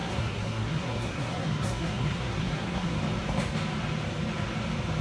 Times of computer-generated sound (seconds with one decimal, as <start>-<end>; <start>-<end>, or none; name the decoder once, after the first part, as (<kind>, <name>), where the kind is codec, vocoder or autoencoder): 0.0-3.0 (codec, SNAC)

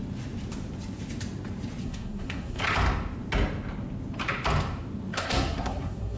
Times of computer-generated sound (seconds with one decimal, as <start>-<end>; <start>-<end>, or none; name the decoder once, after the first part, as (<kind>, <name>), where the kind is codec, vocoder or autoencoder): 1.8-2.6 (codec, SNAC); 5.1-6.2

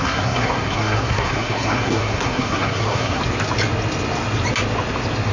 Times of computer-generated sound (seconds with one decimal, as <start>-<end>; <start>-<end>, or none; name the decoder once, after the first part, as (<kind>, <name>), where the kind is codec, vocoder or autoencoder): 0.0-3.2 (codec, SNAC)